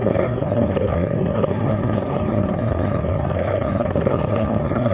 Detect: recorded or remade remade